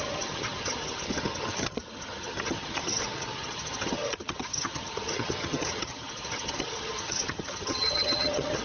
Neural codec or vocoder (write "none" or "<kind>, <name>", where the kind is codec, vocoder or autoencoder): vocoder, HiFi-GAN